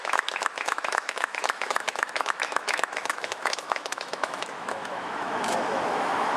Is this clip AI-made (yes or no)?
yes